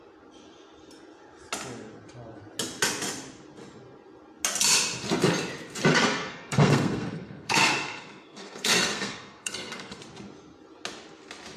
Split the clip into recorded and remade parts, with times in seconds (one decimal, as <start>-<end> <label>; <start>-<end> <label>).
0.0-5.9 recorded; 5.9-10.0 remade; 10.0-11.6 recorded